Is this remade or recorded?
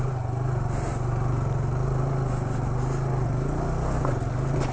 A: recorded